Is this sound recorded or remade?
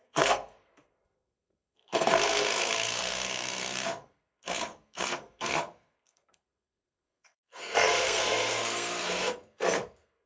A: remade